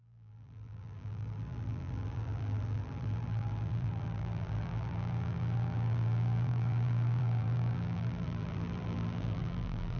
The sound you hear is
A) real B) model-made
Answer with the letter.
B